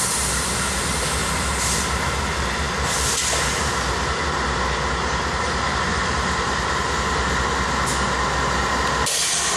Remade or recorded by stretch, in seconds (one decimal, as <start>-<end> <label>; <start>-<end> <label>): 0.0-1.2 recorded; 1.2-2.7 remade; 2.7-5.9 recorded; 5.9-6.9 remade; 6.9-9.6 recorded